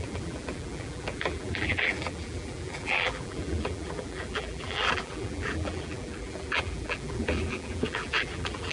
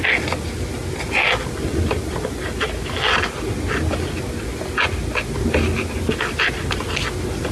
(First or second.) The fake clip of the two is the first